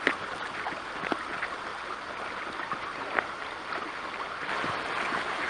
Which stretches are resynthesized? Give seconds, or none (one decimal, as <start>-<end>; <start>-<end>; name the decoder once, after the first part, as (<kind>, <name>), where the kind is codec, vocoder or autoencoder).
none